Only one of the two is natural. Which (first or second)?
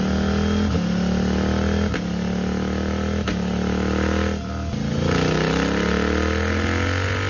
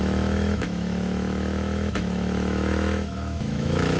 first